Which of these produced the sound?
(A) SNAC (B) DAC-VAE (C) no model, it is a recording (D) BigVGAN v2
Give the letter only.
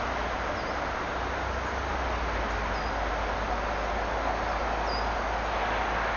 C